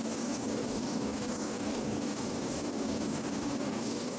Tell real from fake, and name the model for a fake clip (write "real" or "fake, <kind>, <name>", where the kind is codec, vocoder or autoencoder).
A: fake, codec, DAC